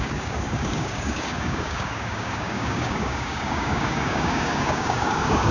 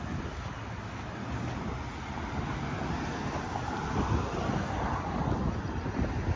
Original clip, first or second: second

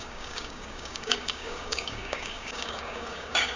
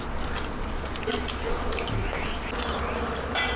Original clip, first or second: second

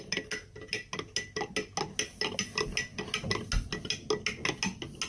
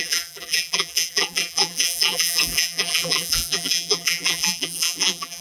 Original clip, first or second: first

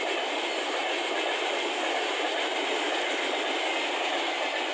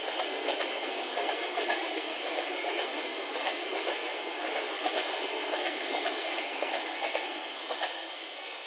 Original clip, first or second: first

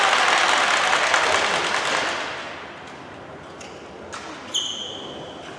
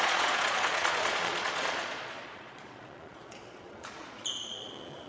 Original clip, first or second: first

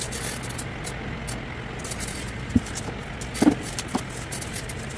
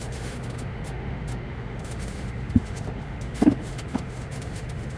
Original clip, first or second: first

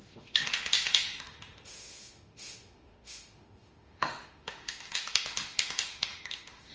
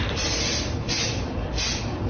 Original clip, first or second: second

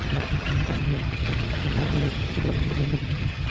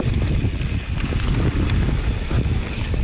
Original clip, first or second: second